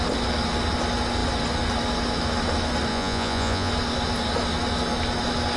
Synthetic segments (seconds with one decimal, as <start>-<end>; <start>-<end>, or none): 2.9-3.7